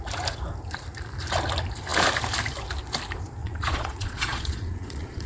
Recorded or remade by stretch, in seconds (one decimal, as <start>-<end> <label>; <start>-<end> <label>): 0.0-3.4 recorded; 3.4-5.3 remade